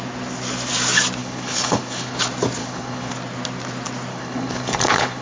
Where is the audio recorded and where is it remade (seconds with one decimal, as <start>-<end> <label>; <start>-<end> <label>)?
0.0-1.2 recorded; 1.2-2.2 remade; 2.2-2.6 recorded; 2.6-3.1 remade; 3.1-4.1 recorded; 4.1-5.2 remade